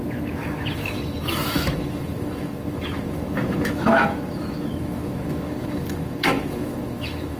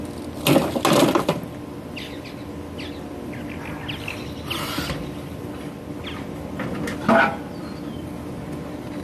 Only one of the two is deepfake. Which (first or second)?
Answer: first